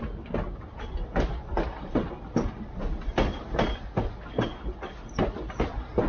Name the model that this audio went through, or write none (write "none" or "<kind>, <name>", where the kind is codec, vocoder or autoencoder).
none